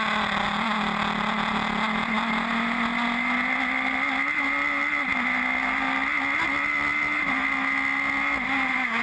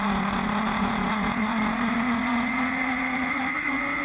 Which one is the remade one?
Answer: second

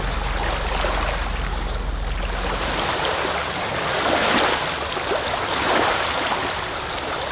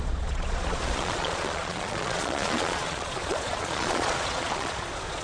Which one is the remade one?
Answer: second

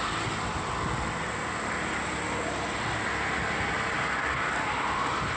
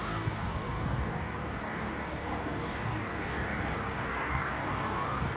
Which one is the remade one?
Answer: second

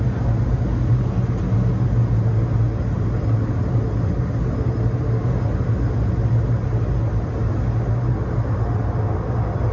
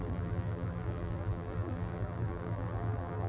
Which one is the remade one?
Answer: second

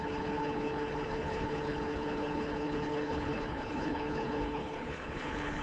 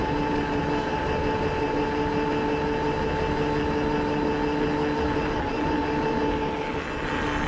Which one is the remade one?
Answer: first